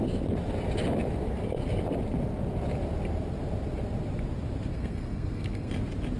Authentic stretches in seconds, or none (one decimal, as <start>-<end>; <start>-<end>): 0.0-4.7; 5.7-6.2